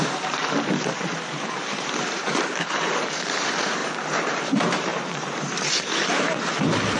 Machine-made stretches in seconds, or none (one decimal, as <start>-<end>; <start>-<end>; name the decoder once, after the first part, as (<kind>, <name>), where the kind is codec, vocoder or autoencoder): 0.0-7.0 (vocoder, BigVGAN v2)